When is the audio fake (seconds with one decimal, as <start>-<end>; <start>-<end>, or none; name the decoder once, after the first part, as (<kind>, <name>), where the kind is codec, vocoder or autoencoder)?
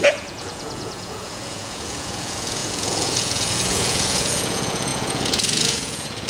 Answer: 0.0-6.3 (vocoder, Vocos)